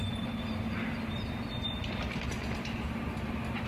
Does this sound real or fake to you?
real